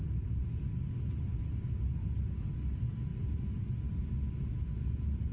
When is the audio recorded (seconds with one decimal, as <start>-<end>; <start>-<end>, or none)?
0.0-5.3

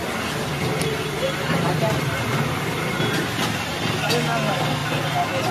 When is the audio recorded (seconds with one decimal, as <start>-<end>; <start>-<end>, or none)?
0.0-0.5; 3.8-5.5